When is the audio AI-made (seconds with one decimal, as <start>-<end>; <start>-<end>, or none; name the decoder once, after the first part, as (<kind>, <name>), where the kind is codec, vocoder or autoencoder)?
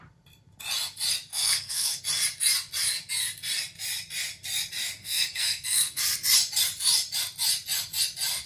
1.3-2.0 (codec, SNAC); 5.0-6.0